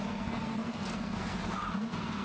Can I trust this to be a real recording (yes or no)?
no